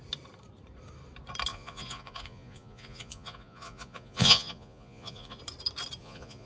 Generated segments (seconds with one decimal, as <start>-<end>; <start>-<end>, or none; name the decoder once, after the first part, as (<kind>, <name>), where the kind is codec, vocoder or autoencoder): 1.5-5.4 (vocoder, Vocos); 6.0-6.5